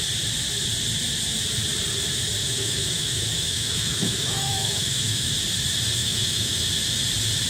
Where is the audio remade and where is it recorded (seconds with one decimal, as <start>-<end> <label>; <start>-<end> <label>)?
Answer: 0.0-2.4 recorded; 2.4-5.3 remade; 5.3-6.0 recorded; 6.0-6.7 remade; 6.7-7.5 recorded